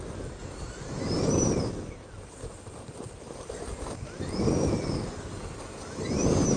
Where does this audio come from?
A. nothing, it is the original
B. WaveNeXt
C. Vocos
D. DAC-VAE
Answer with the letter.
A